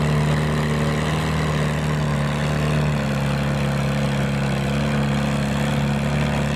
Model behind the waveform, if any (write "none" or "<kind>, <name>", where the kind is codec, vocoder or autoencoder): none